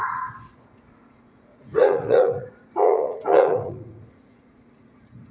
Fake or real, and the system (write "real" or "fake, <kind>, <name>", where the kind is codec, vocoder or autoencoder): fake, vocoder, Vocos